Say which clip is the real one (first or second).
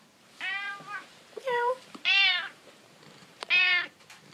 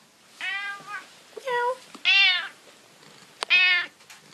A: second